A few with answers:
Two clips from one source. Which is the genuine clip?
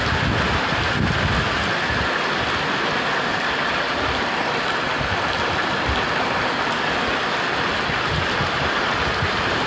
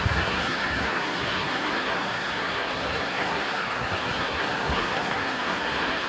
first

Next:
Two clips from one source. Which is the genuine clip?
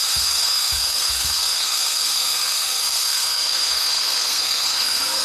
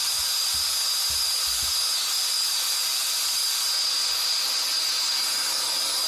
second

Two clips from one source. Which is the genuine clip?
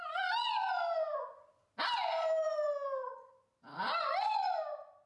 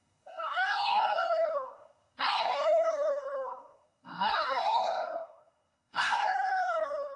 first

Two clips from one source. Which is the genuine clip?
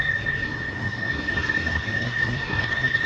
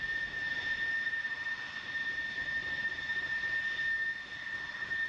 second